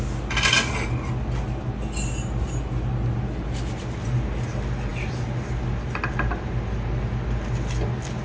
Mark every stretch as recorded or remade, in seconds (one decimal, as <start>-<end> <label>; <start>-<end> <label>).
0.0-8.2 recorded